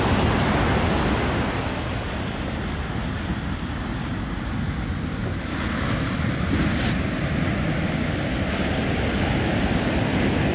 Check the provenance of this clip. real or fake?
real